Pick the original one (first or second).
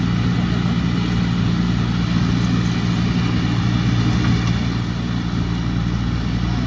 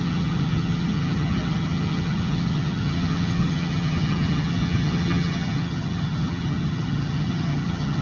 first